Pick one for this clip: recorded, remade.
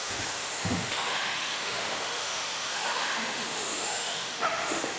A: remade